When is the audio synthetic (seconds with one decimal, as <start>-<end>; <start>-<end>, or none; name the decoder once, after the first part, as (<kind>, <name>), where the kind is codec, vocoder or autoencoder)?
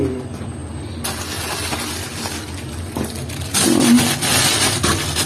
none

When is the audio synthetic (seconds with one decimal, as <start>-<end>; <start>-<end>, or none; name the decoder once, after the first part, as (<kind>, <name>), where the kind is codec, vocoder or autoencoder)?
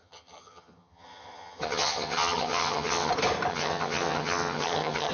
0.0-3.1 (vocoder, HiFi-GAN); 3.5-5.1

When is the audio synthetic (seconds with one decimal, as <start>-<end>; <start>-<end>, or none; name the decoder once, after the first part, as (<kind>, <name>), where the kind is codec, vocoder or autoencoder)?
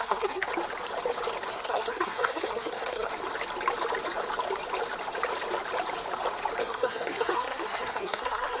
0.0-0.5 (codec, SNAC); 1.5-3.1; 6.6-8.6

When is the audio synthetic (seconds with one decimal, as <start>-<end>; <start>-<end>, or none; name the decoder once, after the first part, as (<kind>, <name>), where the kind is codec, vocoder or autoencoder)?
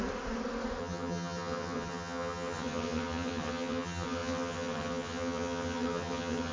0.8-6.5 (vocoder, HiFi-GAN)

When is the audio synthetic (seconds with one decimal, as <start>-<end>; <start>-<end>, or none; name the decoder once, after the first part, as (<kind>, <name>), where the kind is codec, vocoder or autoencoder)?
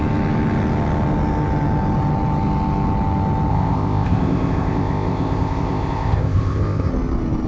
3.5-6.9 (codec, ZipCodec)